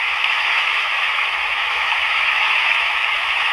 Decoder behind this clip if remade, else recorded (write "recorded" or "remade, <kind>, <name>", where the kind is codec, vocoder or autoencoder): remade, autoencoder, DAC-VAE